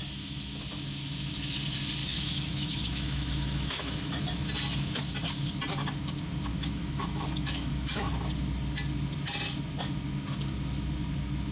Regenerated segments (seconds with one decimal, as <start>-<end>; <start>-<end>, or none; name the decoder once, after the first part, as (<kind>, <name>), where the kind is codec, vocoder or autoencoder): 0.0-0.6 (autoencoder, DAC-VAE); 2.0-4.2; 6.5-8.1